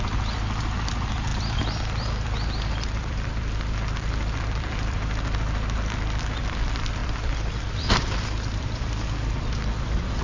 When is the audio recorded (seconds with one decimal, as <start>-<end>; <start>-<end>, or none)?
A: none

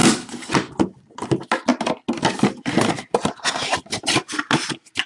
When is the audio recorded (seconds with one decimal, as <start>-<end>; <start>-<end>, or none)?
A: 0.5-5.1

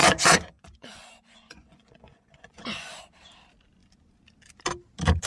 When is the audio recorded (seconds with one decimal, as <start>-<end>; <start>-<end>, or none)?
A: 3.0-5.3

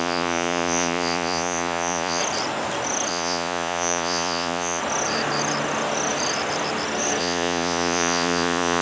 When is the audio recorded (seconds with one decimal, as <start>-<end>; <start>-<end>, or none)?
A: 2.2-3.1; 4.8-7.2

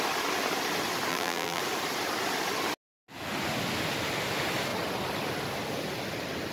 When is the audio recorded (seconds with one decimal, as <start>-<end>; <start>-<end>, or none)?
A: 0.0-1.1; 1.6-6.5

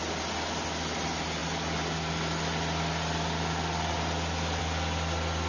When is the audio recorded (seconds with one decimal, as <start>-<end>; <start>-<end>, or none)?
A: 0.0-5.5

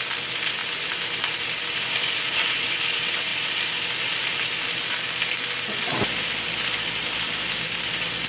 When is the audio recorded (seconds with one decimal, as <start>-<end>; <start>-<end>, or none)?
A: 0.6-1.9; 3.3-5.2